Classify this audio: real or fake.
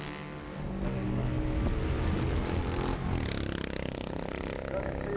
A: real